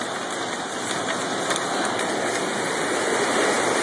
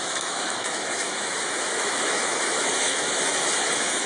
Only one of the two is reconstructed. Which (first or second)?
second